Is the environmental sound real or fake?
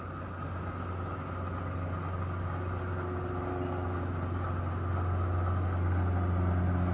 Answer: real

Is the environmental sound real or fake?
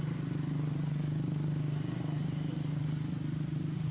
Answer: real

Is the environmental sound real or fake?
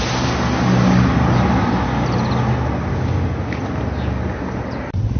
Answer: real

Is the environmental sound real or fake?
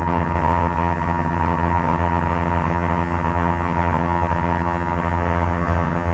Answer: fake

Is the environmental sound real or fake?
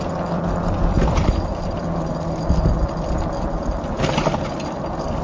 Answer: real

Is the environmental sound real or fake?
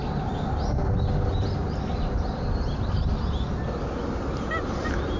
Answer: real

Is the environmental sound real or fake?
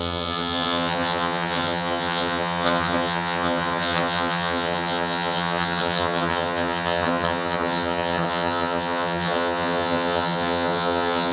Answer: fake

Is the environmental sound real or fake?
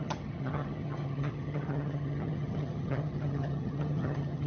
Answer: fake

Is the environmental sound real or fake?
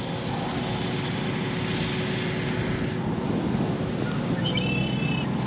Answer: real